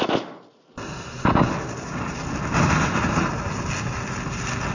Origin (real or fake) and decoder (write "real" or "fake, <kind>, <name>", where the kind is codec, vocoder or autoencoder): real